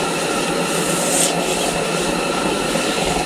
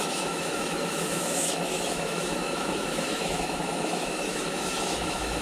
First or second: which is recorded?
first